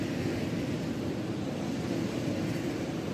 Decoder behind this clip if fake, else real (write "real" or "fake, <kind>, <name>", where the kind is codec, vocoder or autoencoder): real